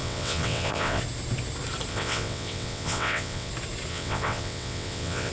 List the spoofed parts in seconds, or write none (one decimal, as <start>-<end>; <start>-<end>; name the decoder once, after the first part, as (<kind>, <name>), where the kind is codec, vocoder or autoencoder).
0.0-1.0 (vocoder, WaveNeXt); 1.9-3.5; 3.9-5.3